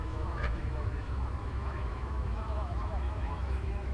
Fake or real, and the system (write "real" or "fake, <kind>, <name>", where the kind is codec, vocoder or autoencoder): fake, autoencoder, DAC-VAE